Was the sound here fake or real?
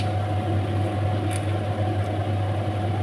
real